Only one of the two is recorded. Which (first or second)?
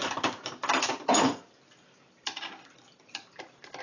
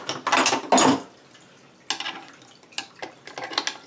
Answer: second